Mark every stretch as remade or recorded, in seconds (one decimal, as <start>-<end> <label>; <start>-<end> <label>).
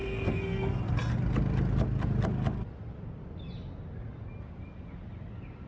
0.0-0.8 remade; 0.8-5.7 recorded